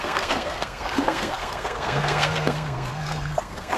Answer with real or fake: fake